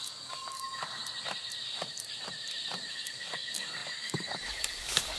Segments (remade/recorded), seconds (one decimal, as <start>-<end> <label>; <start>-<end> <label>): 0.0-1.0 remade; 1.0-2.9 recorded; 2.9-5.2 remade